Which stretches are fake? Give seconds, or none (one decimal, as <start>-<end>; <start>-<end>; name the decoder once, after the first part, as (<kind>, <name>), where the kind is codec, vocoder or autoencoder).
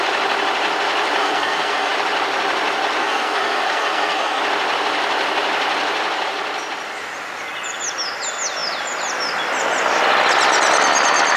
1.2-1.9 (codec, SNAC); 3.0-4.4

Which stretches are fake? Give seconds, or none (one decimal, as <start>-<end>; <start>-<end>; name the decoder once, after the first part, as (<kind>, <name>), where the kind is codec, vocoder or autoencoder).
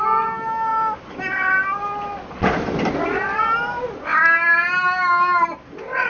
none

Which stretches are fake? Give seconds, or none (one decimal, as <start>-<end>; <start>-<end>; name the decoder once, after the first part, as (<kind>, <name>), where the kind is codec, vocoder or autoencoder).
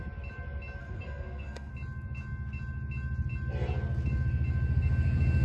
0.8-1.7 (codec, SNAC)